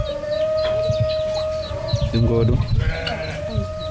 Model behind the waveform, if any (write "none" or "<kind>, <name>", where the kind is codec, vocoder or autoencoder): none